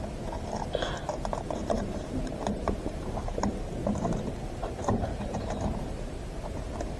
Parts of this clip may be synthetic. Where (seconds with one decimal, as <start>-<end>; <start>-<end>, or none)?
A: 1.6-5.8